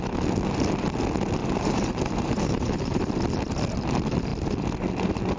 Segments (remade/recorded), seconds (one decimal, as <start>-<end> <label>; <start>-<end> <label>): 0.0-1.4 recorded; 1.4-3.1 remade; 3.1-5.4 recorded